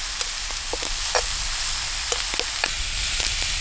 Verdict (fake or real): real